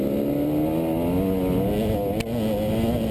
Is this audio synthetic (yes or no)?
no